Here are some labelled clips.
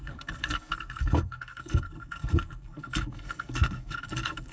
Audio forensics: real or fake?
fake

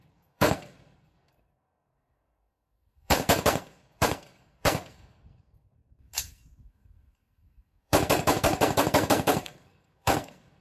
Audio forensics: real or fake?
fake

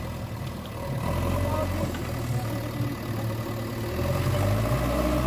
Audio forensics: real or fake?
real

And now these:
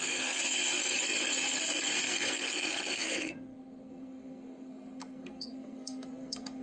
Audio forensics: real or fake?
fake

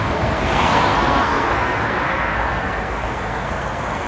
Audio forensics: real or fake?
fake